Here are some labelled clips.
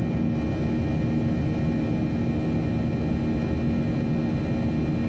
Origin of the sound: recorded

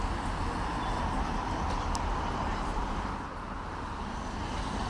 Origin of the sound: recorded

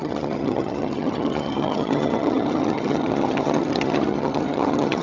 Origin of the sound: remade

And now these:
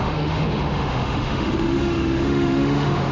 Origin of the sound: remade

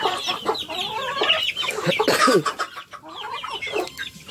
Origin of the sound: recorded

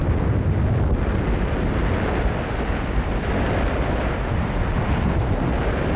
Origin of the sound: recorded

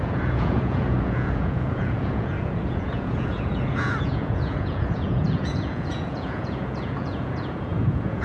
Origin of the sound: remade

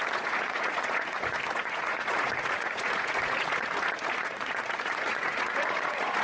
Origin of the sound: remade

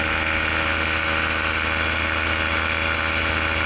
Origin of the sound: recorded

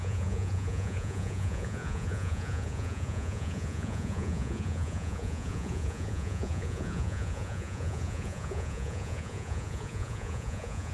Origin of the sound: remade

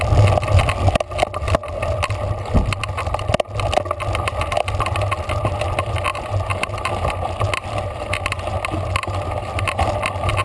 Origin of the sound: recorded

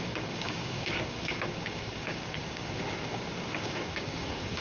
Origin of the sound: remade